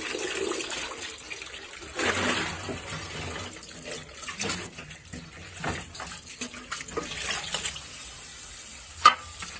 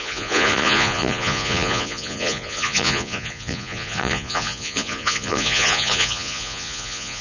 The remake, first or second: second